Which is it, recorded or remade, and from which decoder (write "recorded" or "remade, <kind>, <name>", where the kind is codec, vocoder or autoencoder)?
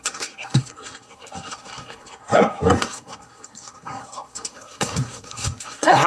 remade, codec, SNAC